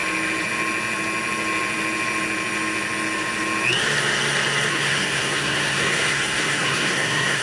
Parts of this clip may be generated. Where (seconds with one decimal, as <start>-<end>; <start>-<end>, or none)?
4.7-7.4